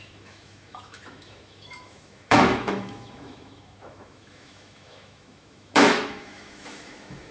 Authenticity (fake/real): fake